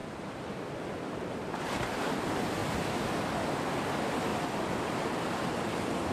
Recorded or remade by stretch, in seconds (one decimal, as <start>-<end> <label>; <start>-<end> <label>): 0.0-1.6 recorded; 1.6-6.1 remade